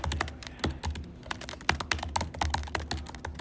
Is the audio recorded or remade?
recorded